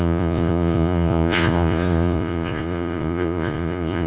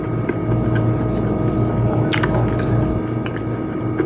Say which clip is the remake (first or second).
first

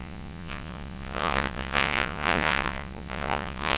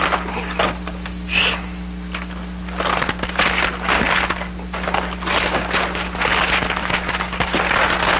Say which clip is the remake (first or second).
first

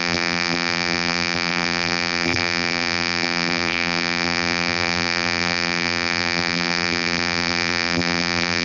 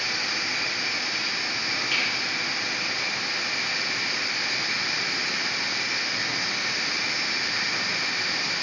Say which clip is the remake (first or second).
first